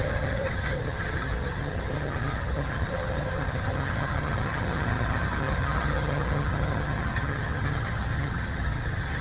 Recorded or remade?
remade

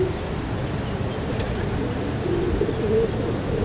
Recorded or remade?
recorded